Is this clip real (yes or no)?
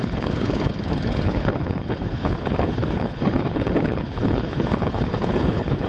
no